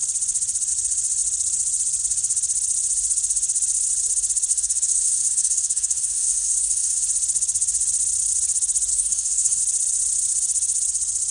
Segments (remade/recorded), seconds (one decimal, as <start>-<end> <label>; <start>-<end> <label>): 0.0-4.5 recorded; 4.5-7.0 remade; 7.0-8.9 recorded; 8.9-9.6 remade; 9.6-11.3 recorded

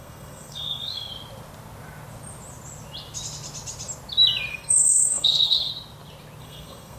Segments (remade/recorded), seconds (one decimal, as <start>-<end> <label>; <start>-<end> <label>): 0.0-1.1 remade; 1.1-4.5 recorded; 4.5-5.7 remade; 5.7-6.4 recorded; 6.4-7.0 remade

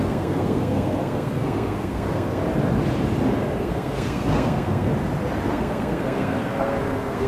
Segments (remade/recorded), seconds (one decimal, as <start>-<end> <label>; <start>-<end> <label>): 0.0-2.4 remade; 2.4-3.6 recorded; 3.6-4.9 remade; 4.9-5.5 recorded; 5.5-7.3 remade

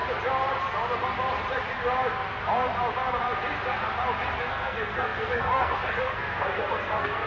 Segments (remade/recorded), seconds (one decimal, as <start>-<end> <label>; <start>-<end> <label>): 0.0-4.4 recorded; 4.4-7.3 remade

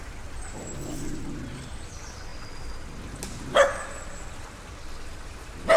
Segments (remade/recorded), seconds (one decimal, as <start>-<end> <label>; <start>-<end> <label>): 0.0-5.8 recorded